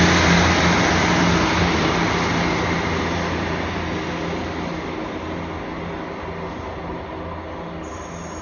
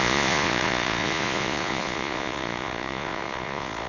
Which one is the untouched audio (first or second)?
first